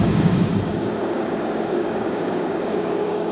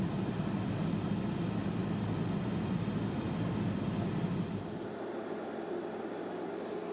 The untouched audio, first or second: second